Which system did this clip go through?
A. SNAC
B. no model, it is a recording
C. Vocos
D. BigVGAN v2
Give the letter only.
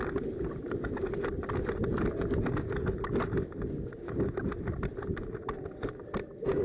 B